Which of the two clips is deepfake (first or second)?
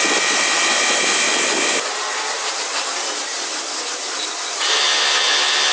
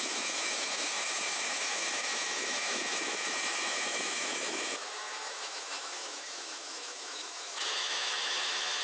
second